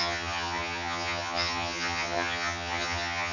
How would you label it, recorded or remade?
remade